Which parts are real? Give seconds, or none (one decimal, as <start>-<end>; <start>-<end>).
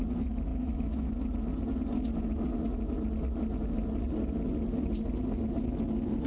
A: 0.0-0.5; 1.1-6.3